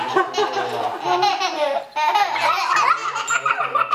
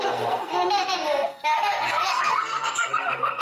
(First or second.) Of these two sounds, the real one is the first